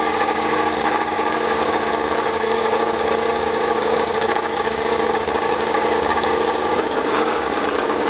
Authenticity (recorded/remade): remade